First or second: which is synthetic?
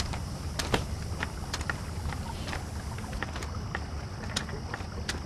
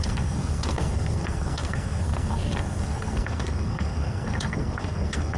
second